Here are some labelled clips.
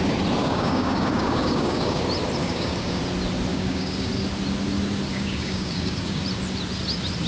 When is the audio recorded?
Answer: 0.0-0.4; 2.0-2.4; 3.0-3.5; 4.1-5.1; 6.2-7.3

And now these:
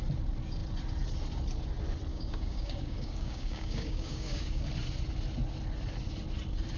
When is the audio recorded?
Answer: 0.0-2.1; 4.7-6.8

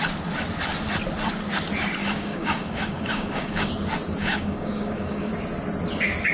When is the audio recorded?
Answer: 0.0-2.0; 3.7-4.2; 5.3-6.3

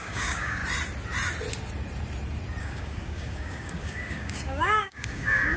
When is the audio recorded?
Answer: 0.6-2.6

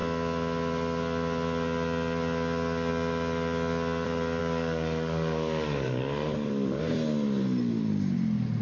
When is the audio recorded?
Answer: 0.0-4.4; 6.8-8.6

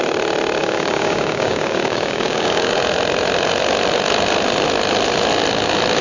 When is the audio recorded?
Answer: 0.0-0.6; 2.7-6.0